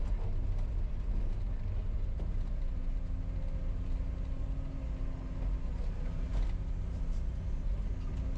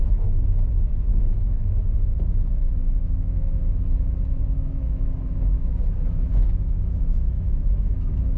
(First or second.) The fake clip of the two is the second